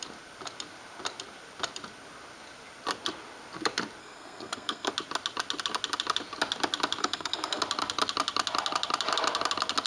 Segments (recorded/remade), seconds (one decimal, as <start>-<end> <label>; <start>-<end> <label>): 0.0-4.0 recorded; 4.0-4.9 remade; 4.9-7.0 recorded; 7.0-7.6 remade; 7.6-9.9 recorded